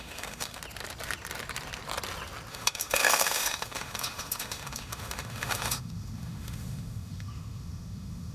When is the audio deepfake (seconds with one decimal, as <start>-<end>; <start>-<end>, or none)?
0.0-0.6; 2.5-8.3